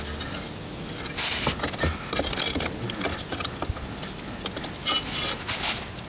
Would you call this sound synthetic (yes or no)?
no